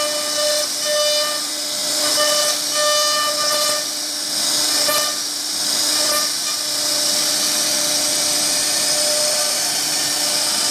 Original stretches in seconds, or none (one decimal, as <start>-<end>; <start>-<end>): 0.0-10.7